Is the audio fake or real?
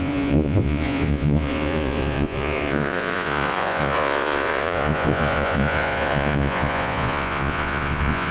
fake